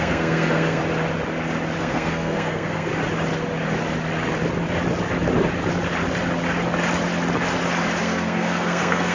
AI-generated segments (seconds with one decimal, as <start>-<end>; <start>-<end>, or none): 0.0-0.8; 1.8-2.9; 8.0-9.1